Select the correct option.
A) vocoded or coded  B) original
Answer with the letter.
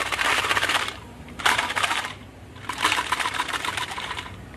A